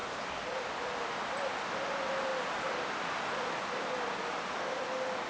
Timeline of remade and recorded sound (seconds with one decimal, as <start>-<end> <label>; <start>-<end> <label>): 0.0-5.3 recorded